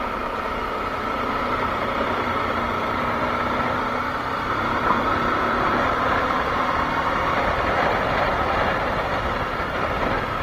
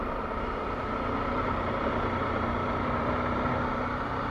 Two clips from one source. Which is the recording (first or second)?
second